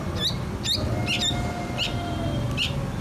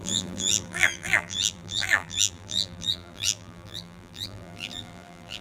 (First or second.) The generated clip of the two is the second